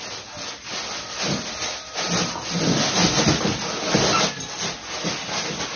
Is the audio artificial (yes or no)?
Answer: no